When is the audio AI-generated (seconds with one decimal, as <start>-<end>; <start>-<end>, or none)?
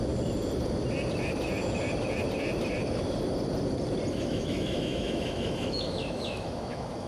4.1-7.1